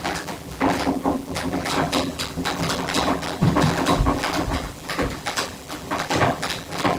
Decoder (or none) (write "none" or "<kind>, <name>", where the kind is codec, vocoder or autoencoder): vocoder, BigVGAN v2